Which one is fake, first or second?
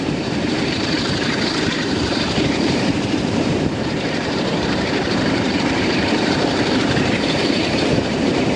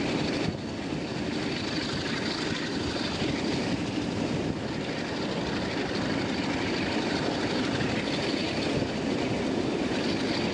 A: first